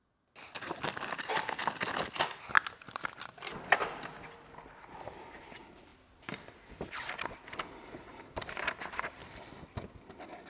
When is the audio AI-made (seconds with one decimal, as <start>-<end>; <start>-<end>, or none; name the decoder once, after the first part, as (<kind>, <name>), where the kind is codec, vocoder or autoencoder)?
none